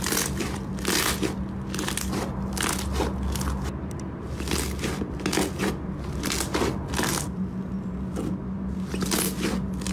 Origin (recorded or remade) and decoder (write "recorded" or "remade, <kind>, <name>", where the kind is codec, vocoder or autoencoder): recorded